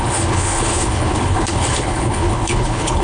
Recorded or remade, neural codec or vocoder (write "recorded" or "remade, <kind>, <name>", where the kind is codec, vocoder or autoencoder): remade, codec, HILCodec